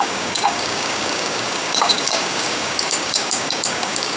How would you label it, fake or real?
fake